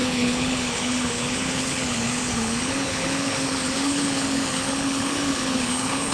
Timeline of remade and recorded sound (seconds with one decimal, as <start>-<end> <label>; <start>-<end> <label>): 0.0-6.1 remade